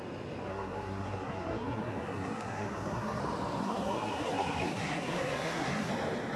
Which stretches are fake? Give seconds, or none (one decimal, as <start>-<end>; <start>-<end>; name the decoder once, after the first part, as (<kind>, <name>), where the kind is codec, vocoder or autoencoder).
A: 0.5-3.2 (codec, SNAC); 3.6-5.9

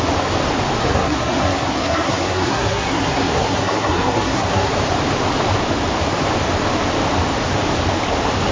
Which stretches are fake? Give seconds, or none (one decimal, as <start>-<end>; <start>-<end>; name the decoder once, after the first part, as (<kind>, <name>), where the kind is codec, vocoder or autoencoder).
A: 0.8-4.7 (codec, SNAC)

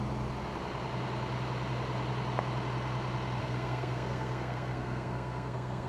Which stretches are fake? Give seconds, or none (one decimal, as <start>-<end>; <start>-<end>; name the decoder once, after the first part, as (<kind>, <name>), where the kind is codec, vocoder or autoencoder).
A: 3.4-5.9 (codec, SNAC)

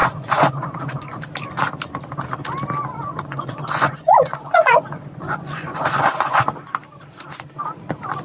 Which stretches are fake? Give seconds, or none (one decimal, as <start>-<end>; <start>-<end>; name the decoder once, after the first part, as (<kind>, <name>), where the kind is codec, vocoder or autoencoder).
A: 0.0-1.2 (vocoder, Vocos); 3.1-6.5

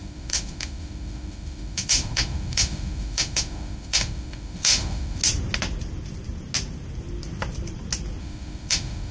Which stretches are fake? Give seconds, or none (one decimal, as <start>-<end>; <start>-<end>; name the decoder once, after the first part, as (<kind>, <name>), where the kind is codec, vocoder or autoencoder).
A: 0.0-5.2 (autoencoder, DAC-VAE); 8.2-9.1

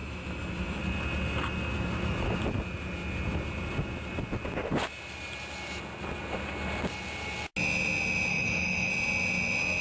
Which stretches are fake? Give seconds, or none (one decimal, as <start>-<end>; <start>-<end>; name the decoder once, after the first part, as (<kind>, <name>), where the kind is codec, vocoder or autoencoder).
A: 0.0-0.8 (autoencoder, DAC-VAE); 8.3-8.9

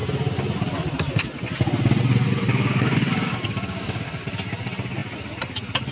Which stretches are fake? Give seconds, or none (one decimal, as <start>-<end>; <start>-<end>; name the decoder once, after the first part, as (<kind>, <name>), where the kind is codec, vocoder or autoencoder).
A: 2.5-4.0 (codec, DAC)